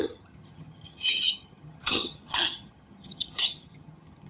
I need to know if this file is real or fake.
fake